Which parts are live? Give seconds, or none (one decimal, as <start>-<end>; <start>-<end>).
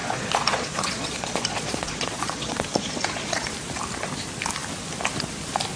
3.5-5.8